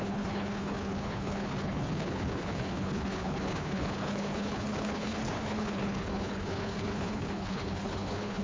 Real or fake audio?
fake